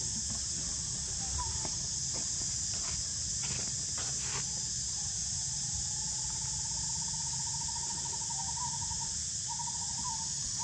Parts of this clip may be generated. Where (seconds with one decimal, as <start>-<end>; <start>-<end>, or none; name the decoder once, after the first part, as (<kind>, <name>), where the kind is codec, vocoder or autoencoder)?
none